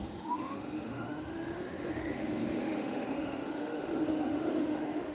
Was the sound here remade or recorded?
remade